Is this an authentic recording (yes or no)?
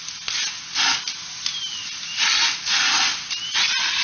yes